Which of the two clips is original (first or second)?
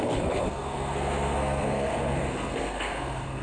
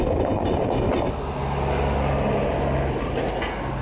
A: second